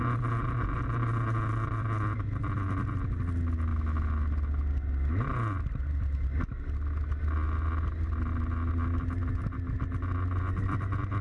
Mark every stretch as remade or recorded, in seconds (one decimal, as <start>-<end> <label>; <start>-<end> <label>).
0.0-11.2 recorded